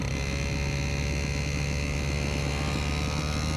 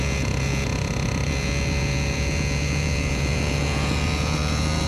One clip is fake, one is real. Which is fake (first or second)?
second